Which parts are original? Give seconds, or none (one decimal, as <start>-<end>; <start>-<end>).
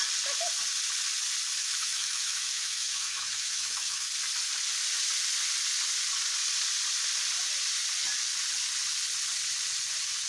0.0-1.6; 4.1-10.3